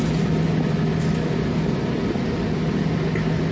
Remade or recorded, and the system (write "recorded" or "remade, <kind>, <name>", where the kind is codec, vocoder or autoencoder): recorded